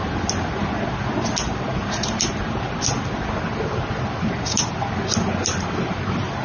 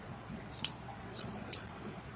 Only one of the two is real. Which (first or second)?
first